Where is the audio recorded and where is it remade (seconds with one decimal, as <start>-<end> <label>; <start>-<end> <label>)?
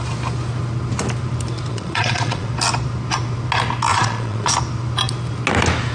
0.0-1.7 recorded; 1.7-2.5 remade; 2.5-3.9 recorded; 3.9-4.5 remade; 4.5-5.9 recorded